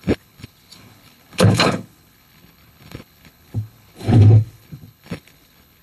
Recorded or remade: remade